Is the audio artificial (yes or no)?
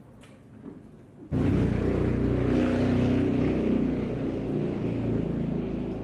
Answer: no